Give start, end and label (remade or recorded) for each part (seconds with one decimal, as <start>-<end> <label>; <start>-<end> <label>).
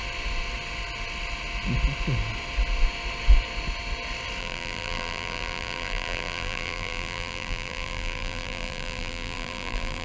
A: 0.0-4.4 recorded; 4.4-10.0 remade